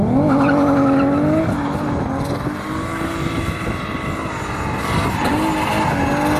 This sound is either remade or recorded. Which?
recorded